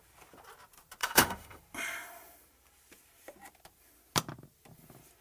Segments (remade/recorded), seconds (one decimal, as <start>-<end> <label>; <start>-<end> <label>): 0.0-1.0 recorded; 1.0-1.6 remade; 1.6-5.2 recorded